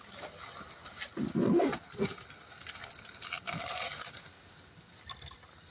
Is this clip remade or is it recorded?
recorded